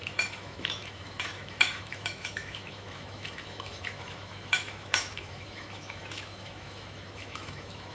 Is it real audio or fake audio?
fake